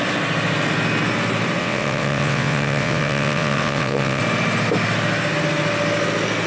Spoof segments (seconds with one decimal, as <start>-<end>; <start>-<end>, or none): 1.6-4.2